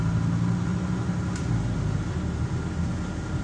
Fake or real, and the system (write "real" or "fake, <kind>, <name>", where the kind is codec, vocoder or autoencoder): real